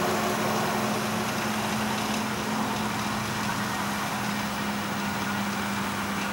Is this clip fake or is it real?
real